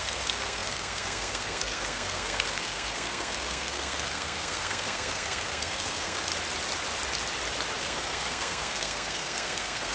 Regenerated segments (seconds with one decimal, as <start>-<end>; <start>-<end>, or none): 0.0-6.3; 7.8-9.9